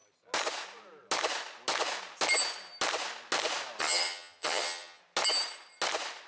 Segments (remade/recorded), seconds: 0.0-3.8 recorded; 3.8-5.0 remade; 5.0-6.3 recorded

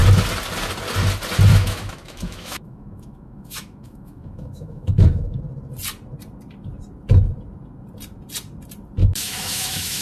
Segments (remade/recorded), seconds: 0.0-1.5 recorded; 1.5-5.4 remade; 5.4-9.0 recorded; 9.0-10.0 remade

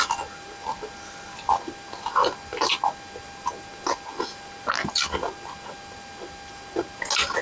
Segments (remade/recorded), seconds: 0.0-7.4 recorded

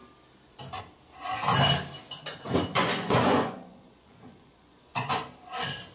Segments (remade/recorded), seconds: 0.0-2.7 recorded; 2.7-5.2 remade; 5.2-5.9 recorded

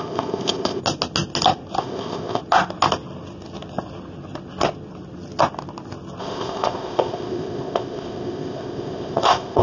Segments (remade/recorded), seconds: 0.0-0.8 remade; 0.8-1.8 recorded; 1.8-2.4 remade; 2.4-6.2 recorded; 6.2-9.6 remade

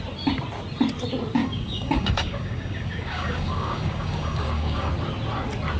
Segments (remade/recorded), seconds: 0.0-1.4 recorded; 1.4-4.9 remade; 4.9-5.8 recorded

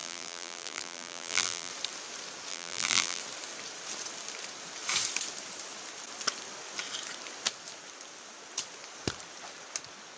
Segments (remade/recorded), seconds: 0.0-1.7 remade; 1.7-2.5 recorded; 2.5-3.2 remade; 3.2-10.2 recorded

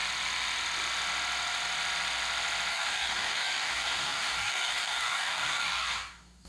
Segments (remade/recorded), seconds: 0.0-2.7 recorded; 2.7-6.5 remade